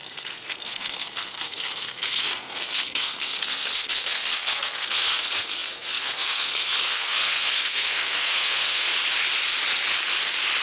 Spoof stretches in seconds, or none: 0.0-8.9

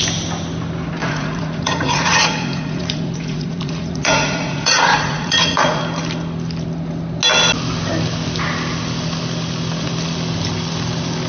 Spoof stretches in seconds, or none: 1.0-5.8

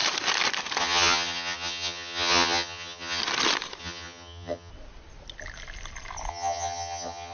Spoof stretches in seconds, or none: 0.8-3.2; 3.8-4.7; 6.3-7.3

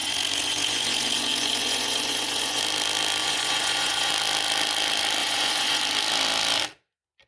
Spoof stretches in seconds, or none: 0.0-2.6; 3.2-4.1; 5.2-5.8

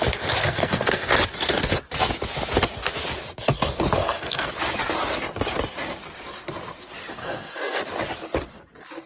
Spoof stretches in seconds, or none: 0.4-1.1; 4.0-4.5; 7.2-7.8

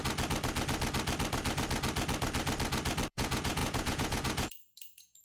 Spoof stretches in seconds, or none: 3.1-5.2

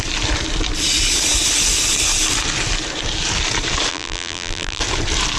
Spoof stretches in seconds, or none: 3.9-4.8